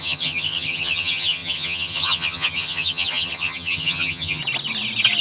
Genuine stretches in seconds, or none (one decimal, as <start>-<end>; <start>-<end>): 4.4-5.2